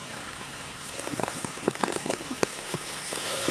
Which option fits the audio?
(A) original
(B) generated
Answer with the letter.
B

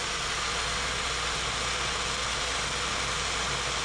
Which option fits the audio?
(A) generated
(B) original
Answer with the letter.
B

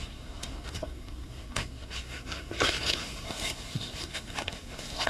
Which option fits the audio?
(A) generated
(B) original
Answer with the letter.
A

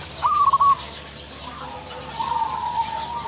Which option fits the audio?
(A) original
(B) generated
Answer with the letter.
A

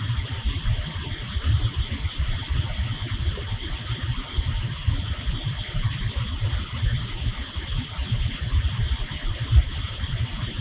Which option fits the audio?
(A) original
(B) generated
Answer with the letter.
A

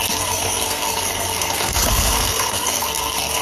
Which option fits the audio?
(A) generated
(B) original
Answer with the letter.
A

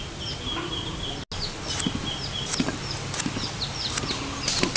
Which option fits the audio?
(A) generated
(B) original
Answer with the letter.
B